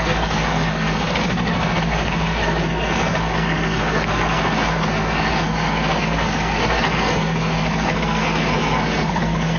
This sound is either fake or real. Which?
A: fake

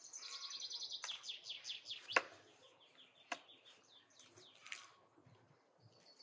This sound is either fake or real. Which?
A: real